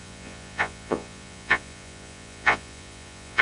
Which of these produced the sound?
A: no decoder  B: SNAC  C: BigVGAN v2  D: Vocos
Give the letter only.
D